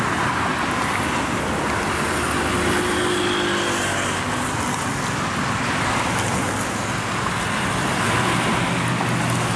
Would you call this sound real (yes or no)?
yes